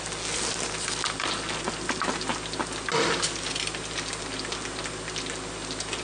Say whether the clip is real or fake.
real